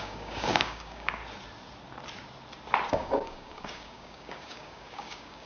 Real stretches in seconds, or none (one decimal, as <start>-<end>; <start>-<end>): 1.2-2.9